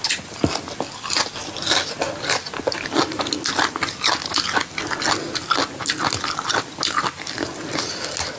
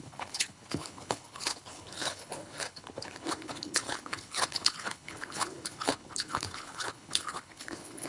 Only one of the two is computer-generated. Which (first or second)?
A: second